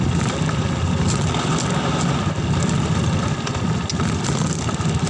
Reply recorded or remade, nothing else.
recorded